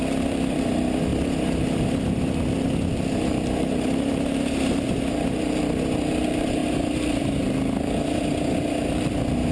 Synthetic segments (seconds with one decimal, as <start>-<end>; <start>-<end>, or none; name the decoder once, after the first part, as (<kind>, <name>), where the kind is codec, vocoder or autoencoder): none